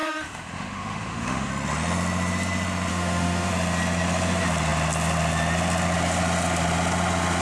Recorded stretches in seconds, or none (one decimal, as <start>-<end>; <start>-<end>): 1.5-2.9; 3.5-7.4